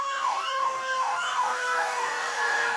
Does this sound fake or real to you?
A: fake